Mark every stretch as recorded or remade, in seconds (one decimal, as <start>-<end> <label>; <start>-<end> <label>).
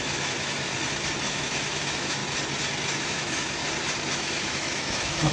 0.0-0.7 remade; 0.7-1.2 recorded; 1.2-2.2 remade; 2.2-3.0 recorded; 3.0-3.6 remade; 3.6-4.1 recorded; 4.1-5.3 remade